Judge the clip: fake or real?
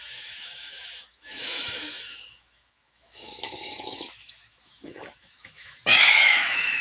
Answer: fake